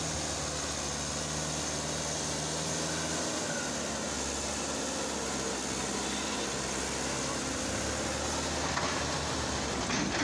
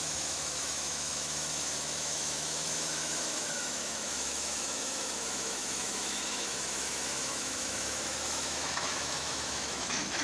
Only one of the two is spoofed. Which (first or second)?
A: second